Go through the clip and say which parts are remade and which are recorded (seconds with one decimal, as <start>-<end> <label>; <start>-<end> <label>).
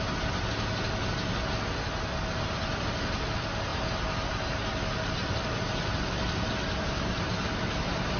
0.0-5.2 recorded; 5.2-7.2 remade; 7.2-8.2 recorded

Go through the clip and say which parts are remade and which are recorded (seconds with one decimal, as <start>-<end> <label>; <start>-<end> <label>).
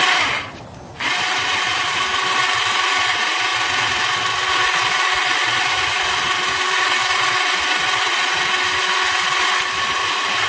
0.0-3.5 remade; 3.5-4.9 recorded; 4.9-7.0 remade; 7.0-9.7 recorded; 9.7-10.5 remade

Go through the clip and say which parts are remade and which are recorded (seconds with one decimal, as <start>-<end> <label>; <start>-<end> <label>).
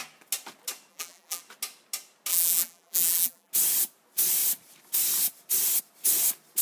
0.0-0.9 recorded; 0.9-1.4 remade; 1.4-2.3 recorded; 2.3-3.5 remade; 3.5-6.6 recorded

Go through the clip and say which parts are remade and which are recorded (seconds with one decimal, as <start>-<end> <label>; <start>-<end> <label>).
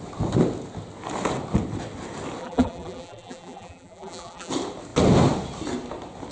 0.0-2.4 recorded; 2.4-4.5 remade; 4.5-6.3 recorded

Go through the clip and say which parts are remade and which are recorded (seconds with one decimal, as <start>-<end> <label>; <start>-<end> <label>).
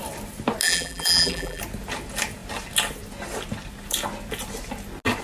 0.0-0.6 recorded; 0.6-1.6 remade; 1.6-5.2 recorded